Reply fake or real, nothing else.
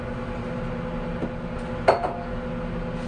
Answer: real